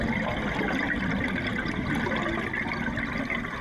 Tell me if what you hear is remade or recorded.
recorded